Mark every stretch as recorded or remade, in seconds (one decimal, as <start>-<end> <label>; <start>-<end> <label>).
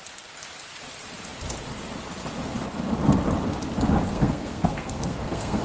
0.0-4.1 recorded; 4.1-5.6 remade